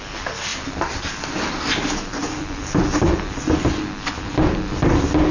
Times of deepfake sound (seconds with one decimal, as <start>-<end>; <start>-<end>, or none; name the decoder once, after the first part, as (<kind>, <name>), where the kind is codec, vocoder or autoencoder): none